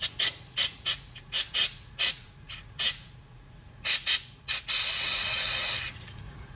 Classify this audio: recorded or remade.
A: remade